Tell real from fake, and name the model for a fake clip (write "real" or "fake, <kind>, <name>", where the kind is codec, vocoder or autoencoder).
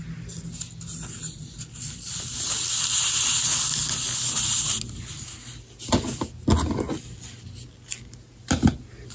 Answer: real